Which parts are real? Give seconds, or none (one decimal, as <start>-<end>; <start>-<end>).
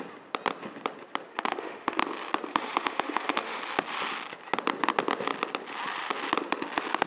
0.0-1.3; 2.0-2.5; 3.6-7.1